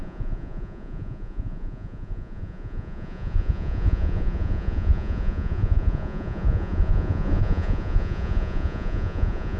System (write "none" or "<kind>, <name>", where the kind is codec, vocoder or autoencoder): vocoder, Vocos